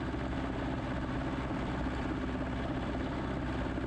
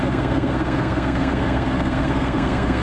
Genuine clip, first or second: first